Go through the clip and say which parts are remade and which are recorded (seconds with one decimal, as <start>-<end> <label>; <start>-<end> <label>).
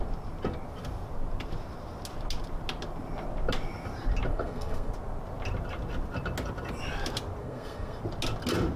0.0-4.3 recorded; 4.3-4.9 remade; 4.9-7.4 recorded; 7.4-8.0 remade; 8.0-8.8 recorded